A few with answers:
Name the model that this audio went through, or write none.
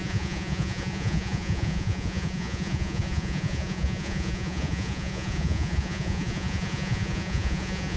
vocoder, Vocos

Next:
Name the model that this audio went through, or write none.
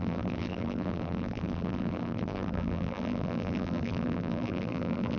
vocoder, BigVGAN v2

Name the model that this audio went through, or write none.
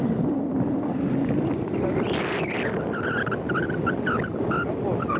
none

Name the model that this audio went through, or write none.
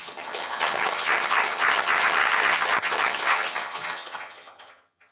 vocoder, HiFi-GAN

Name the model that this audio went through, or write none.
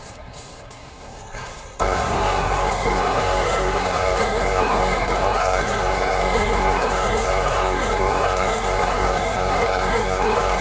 codec, SNAC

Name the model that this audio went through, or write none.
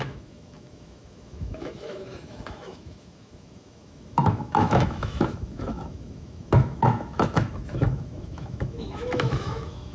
autoencoder, DAC-VAE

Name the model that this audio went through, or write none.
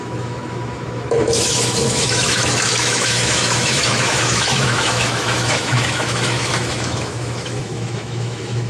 autoencoder, DAC-VAE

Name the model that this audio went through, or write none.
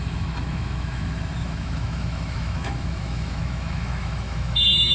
autoencoder, DAC-VAE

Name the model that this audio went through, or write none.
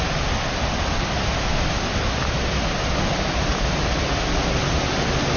none